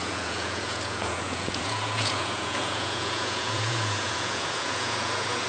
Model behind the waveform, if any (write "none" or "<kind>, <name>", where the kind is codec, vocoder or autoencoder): vocoder, Vocos